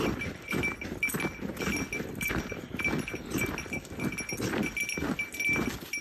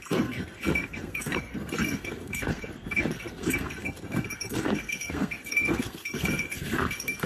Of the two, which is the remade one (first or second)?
second